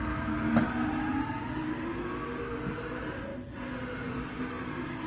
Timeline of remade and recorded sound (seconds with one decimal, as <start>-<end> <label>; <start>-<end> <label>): 0.0-5.1 recorded